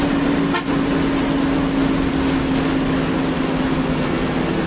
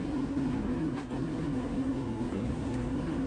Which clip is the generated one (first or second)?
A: second